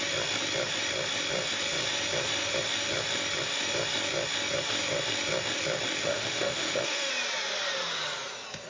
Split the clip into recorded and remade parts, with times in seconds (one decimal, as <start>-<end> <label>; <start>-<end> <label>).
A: 0.0-6.0 recorded; 6.0-7.1 remade; 7.1-8.7 recorded